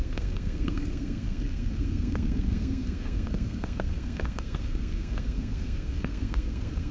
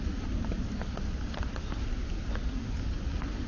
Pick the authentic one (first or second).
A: second